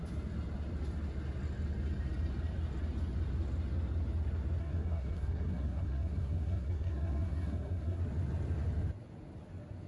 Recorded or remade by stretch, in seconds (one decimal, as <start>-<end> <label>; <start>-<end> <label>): 0.0-4.6 recorded; 4.6-8.0 remade; 8.0-9.9 recorded